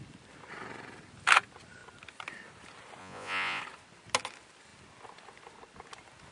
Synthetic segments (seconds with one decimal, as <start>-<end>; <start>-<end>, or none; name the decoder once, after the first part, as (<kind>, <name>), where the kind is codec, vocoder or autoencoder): 3.0-3.6 (vocoder, Vocos)

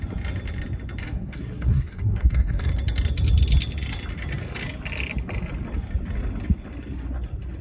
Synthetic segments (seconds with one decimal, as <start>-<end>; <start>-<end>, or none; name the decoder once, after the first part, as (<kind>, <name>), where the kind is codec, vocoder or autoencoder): 1.0-2.7 (codec, SNAC)

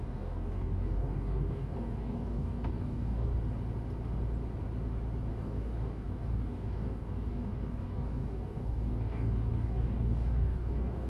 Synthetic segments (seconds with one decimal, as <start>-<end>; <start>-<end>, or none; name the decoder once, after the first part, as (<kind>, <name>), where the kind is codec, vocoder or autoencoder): 0.0-3.3 (codec, DAC); 5.3-11.1